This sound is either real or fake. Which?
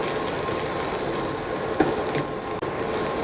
real